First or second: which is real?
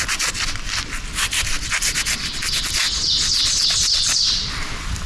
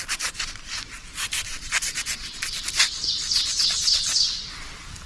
first